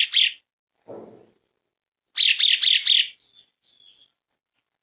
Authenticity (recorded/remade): recorded